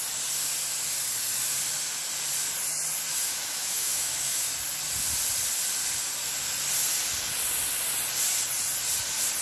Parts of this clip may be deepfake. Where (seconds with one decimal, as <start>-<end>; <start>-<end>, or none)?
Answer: 3.1-4.5